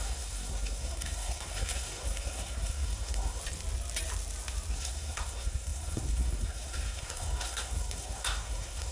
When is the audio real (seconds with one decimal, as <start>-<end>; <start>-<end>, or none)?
3.4-4.7